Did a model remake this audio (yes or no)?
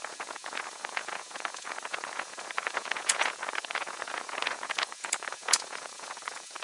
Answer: yes